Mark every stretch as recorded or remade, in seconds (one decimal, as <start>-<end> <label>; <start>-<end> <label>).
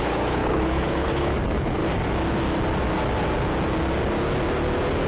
0.0-1.8 remade; 1.8-5.1 recorded